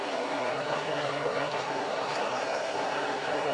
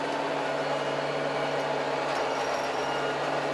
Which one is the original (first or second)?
second